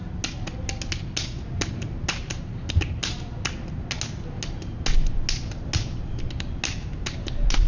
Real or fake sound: real